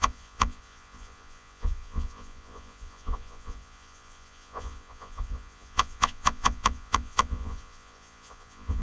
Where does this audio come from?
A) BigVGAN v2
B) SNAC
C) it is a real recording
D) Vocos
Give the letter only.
D